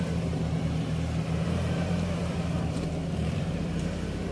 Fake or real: fake